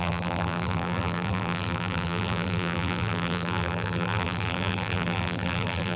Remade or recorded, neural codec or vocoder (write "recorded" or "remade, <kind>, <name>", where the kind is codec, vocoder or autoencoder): remade, vocoder, BigVGAN v2